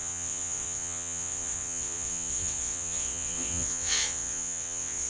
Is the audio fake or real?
fake